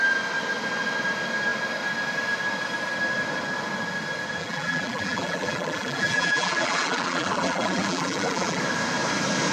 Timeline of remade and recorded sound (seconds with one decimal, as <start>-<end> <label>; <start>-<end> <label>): 0.0-4.4 recorded; 4.4-8.6 remade; 8.6-9.5 recorded